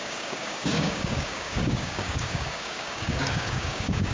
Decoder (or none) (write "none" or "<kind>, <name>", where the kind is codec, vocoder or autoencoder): codec, DAC